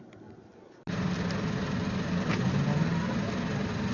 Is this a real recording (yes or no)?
yes